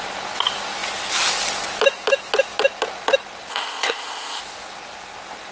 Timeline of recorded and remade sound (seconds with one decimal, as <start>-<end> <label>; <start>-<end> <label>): 0.0-3.5 recorded; 3.5-4.4 remade; 4.4-5.5 recorded